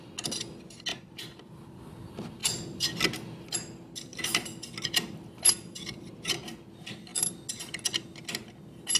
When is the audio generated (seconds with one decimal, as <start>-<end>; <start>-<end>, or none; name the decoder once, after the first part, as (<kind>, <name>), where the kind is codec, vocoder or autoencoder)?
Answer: 0.9-1.5 (vocoder, BigVGAN v2); 2.4-3.0; 4.1-6.5